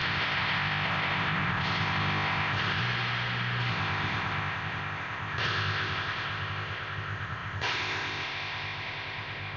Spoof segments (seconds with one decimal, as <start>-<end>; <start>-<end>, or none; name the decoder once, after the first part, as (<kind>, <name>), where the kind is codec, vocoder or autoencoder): 0.0-2.8 (codec, ZipCodec); 3.7-9.6